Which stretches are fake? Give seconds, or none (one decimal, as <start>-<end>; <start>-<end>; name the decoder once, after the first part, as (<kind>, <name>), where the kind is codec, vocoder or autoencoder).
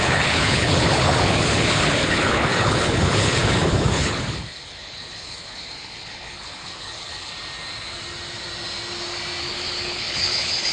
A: 0.0-7.3 (codec, HILCodec); 9.4-10.7